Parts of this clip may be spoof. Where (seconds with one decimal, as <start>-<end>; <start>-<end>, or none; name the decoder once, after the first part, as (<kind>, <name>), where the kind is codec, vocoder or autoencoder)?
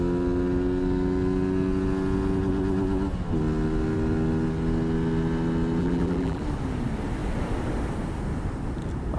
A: 5.8-6.4 (vocoder, BigVGAN v2)